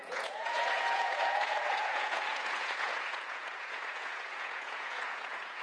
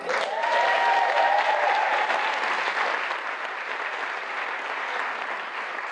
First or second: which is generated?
first